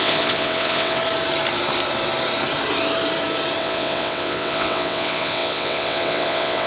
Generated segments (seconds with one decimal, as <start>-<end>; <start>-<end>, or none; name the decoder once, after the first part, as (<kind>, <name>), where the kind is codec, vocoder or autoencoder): 0.0-1.0 (vocoder, WaveNeXt); 3.6-6.7